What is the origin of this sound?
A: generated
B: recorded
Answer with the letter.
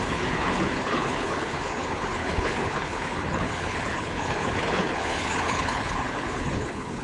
A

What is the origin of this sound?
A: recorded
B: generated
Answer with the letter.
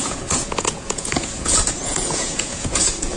B